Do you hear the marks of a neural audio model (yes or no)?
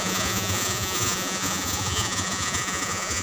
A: yes